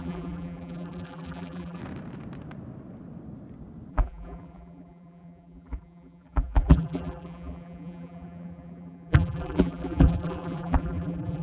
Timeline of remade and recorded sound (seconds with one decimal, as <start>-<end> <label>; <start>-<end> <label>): 0.0-1.8 remade; 1.8-3.9 recorded; 3.9-11.4 remade